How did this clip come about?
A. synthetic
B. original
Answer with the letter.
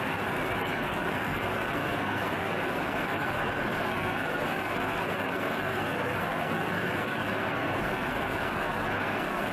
A